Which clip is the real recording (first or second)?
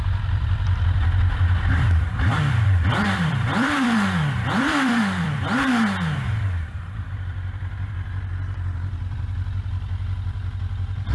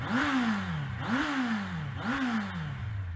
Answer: second